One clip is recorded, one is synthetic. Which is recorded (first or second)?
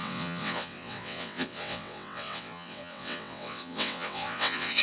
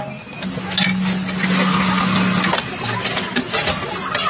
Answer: second